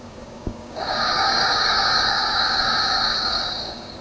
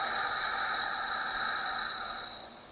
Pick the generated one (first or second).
first